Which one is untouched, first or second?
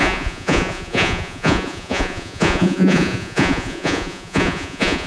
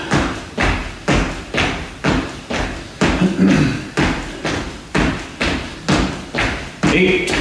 second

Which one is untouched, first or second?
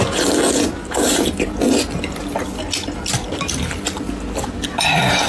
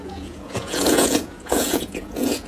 first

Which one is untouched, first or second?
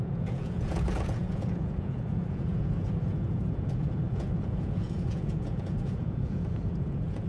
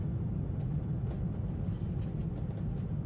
second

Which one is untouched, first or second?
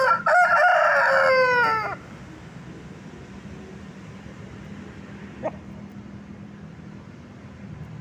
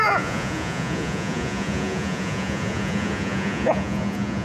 first